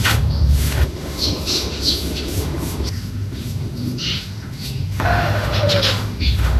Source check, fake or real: fake